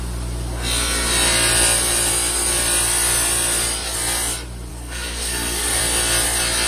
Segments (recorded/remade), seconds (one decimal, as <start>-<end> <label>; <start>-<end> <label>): 0.0-4.7 recorded; 4.7-5.8 remade; 5.8-6.7 recorded